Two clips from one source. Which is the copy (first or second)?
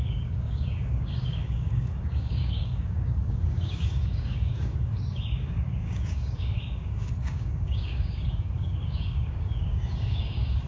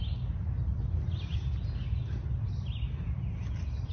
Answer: first